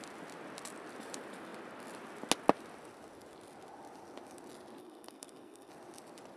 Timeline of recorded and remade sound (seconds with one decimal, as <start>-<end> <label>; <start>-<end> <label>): 0.0-4.8 recorded; 4.8-5.7 remade; 5.7-6.4 recorded